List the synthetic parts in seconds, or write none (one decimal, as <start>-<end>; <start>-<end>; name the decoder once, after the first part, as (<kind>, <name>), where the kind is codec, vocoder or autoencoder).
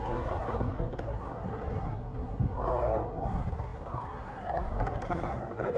0.0-5.8 (codec, SNAC)